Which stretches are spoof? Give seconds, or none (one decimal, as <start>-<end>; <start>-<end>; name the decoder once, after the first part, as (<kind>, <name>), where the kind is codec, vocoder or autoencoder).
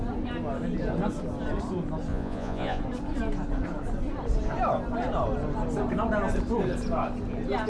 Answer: 2.1-2.8 (vocoder, Vocos)